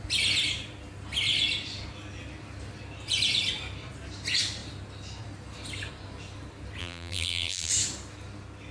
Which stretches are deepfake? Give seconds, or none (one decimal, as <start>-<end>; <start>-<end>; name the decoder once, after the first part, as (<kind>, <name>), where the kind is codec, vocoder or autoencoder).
6.8-7.7 (vocoder, BigVGAN v2)